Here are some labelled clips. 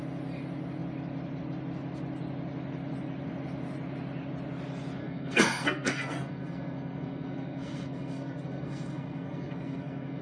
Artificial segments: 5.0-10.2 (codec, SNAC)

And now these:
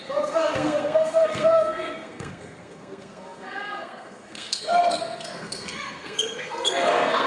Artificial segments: 0.0-7.3 (codec, SNAC)

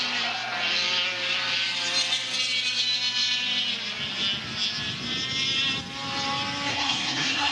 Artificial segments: 6.7-7.5 (codec, SNAC)

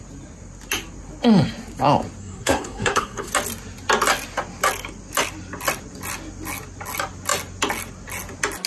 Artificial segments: 2.2-3.3 (codec, SNAC)

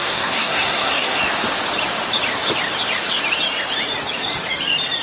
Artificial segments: 0.0-1.2 (codec, SNAC)

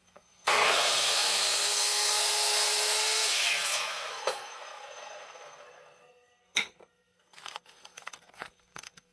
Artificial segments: 0.0-9.1 (codec, SNAC)

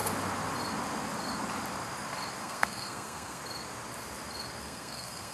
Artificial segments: 2.4-3.4 (codec, SNAC); 4.6-5.3

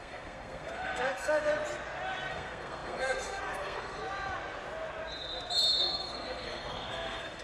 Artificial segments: 0.0-1.5 (codec, SNAC); 2.3-4.0; 5.8-7.4